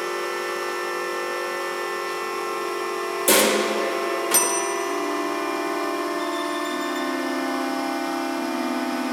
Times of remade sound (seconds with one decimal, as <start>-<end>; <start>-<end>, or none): none